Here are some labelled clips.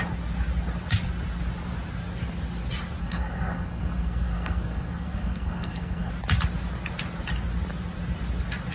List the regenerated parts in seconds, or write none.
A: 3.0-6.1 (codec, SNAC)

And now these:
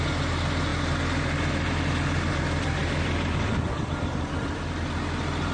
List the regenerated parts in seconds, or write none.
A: none